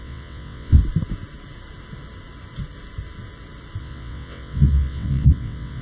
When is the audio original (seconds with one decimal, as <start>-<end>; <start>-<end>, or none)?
0.8-3.8